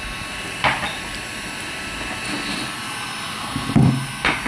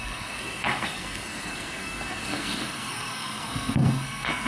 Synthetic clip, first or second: second